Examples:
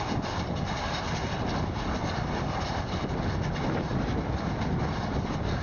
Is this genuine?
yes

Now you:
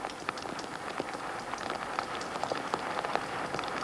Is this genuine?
yes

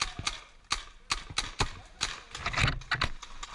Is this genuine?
yes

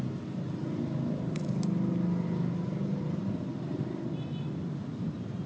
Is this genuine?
yes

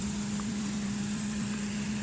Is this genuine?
no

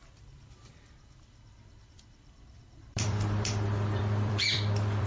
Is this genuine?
no